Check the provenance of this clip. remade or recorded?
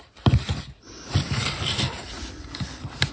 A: recorded